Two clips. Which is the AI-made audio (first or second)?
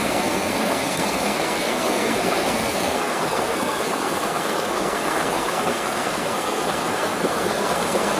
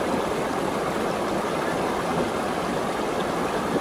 first